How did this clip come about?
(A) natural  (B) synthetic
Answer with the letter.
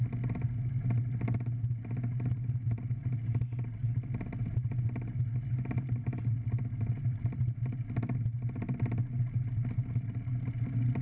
A